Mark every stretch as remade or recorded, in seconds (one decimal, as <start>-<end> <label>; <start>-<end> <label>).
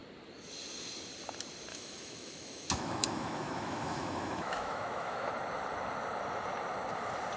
0.0-1.7 recorded; 1.7-5.3 remade; 5.3-7.4 recorded